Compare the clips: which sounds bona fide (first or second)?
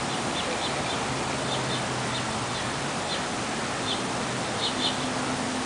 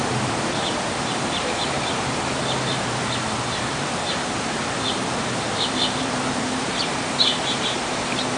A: first